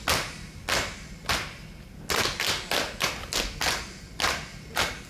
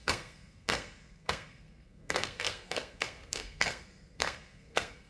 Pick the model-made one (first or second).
second